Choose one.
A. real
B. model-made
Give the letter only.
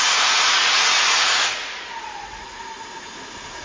B